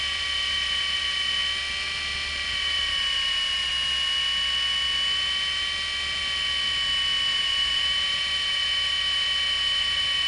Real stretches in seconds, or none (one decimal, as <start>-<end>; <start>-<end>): 1.4-2.5; 3.7-7.3